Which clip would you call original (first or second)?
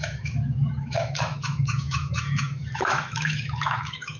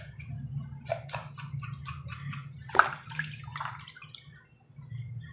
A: second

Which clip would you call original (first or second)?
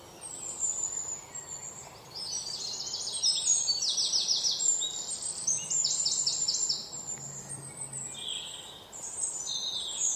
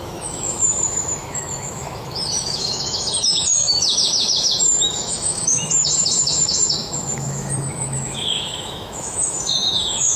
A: first